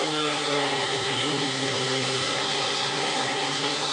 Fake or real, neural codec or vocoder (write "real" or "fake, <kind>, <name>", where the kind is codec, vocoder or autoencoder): fake, codec, SNAC